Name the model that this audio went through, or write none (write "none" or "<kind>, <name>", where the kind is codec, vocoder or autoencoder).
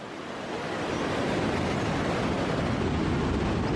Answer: none